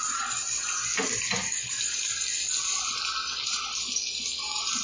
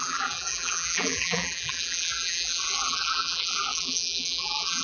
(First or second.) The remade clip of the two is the second